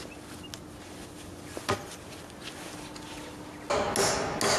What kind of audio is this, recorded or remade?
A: recorded